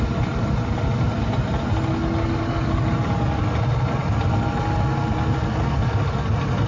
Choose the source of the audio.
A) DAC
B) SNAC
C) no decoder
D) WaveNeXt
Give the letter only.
C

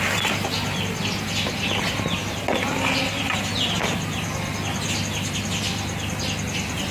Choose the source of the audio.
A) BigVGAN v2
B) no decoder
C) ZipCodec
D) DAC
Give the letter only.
B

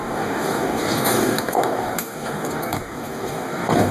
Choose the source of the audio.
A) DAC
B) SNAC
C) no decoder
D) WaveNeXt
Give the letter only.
A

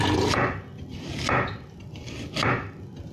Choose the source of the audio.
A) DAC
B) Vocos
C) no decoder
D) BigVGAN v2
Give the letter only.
C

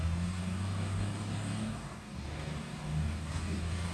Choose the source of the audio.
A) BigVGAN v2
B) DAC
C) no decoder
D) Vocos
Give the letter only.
B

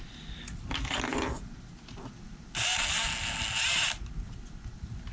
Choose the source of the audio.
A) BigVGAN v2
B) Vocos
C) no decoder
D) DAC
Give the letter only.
C